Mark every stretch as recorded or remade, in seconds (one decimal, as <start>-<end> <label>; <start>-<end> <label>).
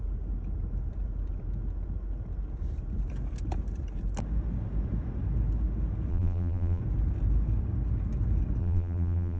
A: 0.0-6.1 recorded; 6.1-6.8 remade; 6.8-8.6 recorded; 8.6-9.4 remade